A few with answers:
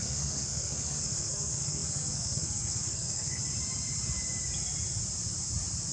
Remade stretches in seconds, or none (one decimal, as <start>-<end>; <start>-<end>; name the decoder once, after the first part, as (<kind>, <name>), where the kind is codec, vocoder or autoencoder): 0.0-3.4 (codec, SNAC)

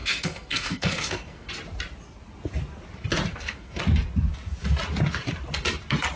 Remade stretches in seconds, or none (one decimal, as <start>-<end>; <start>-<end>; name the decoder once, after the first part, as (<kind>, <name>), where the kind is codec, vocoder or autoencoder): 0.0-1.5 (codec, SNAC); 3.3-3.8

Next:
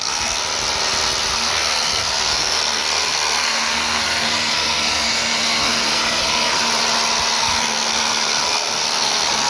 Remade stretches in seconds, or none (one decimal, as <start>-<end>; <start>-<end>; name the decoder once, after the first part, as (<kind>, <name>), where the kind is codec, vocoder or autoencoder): 0.0-0.4 (codec, SNAC); 1.3-6.6; 7.4-9.5

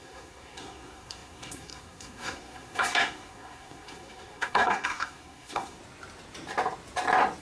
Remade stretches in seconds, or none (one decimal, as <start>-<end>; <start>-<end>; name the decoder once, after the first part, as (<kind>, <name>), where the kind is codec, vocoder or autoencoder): 0.0-5.8 (codec, SNAC)